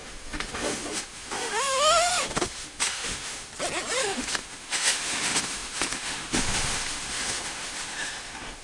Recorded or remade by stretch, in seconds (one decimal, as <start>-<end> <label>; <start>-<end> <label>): 0.0-3.5 remade; 3.5-4.0 recorded; 4.0-8.6 remade